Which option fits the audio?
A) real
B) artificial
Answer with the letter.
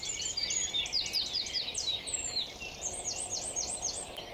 A